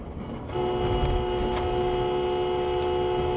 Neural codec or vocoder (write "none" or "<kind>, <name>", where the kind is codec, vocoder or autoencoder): none